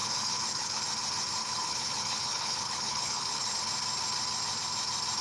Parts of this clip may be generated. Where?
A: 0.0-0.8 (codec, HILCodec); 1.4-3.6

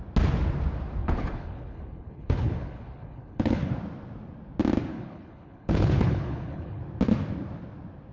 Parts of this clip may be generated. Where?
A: 1.0-3.7 (codec, HILCodec); 4.9-6.8

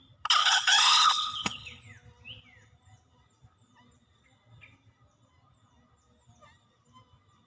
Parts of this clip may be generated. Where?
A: 0.4-1.8 (codec, HILCodec)

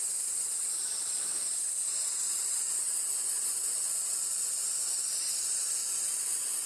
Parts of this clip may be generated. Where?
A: none

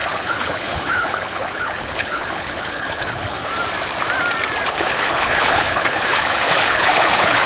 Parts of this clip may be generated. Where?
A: 0.0-3.5 (codec, HILCodec); 4.7-7.5

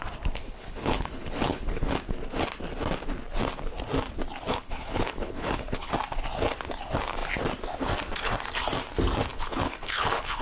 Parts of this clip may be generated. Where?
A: 0.4-1.9 (codec, HILCodec); 4.5-5.9; 9.3-10.4

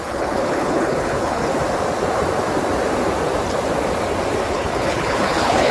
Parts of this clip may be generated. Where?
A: 0.0-1.5 (codec, HILCodec); 4.5-5.7